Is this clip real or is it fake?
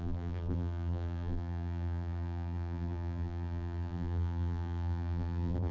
fake